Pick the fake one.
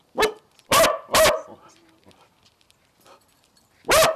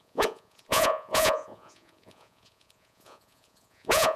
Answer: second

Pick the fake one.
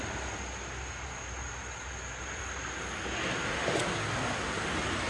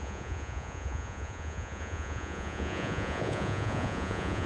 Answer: second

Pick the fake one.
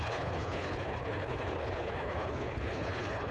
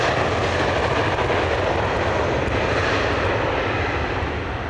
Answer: first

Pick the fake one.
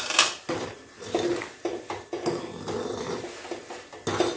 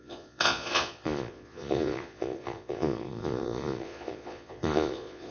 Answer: second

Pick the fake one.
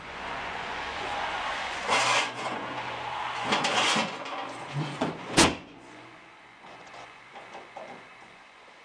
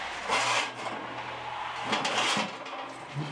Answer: first